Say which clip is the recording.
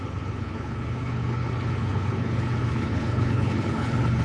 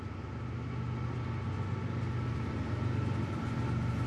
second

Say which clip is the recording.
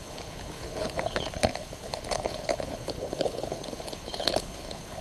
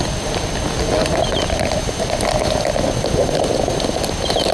second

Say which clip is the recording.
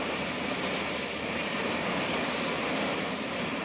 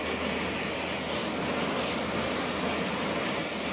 second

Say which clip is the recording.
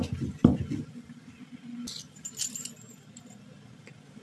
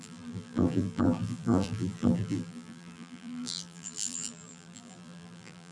first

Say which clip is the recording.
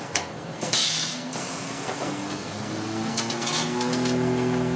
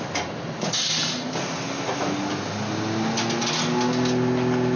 second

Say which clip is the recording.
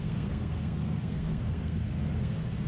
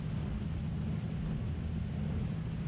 second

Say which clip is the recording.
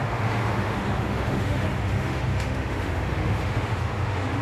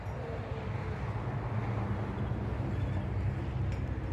second